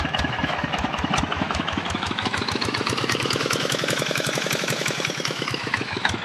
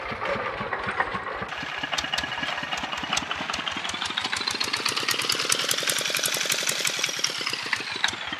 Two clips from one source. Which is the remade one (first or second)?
first